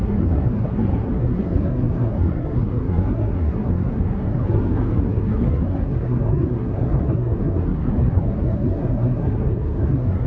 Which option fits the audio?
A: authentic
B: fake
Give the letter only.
B